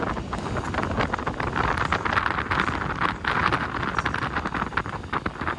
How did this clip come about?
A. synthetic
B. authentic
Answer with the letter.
B